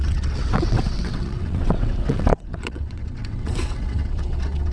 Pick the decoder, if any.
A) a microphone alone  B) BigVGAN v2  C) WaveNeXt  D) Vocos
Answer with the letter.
C